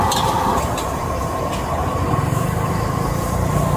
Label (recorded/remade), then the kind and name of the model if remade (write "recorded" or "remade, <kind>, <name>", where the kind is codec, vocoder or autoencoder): recorded